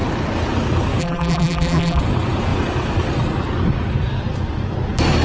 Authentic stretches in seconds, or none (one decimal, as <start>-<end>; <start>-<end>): 0.0-1.0; 2.0-5.2